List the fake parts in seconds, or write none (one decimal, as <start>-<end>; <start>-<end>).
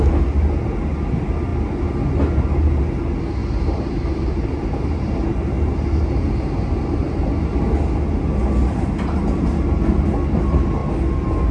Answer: 3.4-5.1